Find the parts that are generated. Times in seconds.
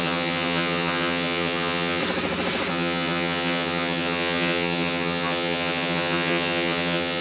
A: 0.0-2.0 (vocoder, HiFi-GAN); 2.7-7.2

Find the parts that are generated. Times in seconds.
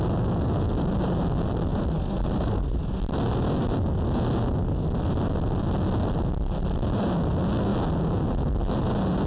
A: 1.7-2.9 (vocoder, BigVGAN v2)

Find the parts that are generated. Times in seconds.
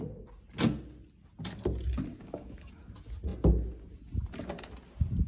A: 2.1-2.7 (codec, DAC)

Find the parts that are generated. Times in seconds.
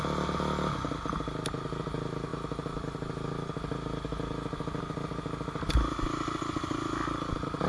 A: none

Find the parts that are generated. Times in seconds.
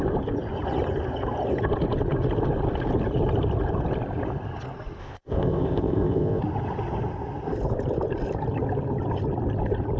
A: 5.0-6.4 (codec, ZipCodec)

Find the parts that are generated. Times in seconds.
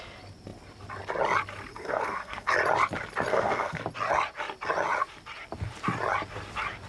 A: 1.7-2.5 (codec, SNAC); 3.3-3.8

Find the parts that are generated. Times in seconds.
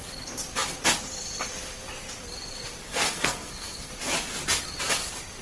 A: 2.8-3.9 (codec, SNAC)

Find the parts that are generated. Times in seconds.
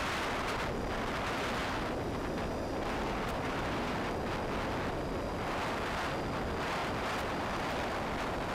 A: 1.6-4.0 (vocoder, BigVGAN v2); 6.8-7.9